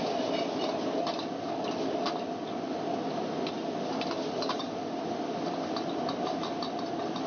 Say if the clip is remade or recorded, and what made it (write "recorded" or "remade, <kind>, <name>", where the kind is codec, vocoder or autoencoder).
recorded